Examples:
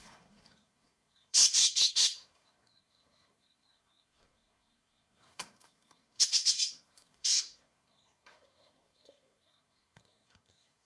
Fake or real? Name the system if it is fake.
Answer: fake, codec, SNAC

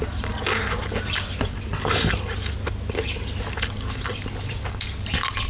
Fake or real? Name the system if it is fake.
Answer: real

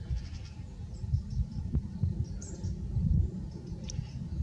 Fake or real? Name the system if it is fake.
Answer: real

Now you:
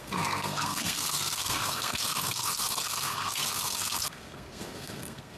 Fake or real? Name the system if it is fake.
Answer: fake, codec, SNAC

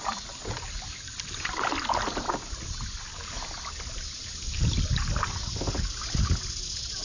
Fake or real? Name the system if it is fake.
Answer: real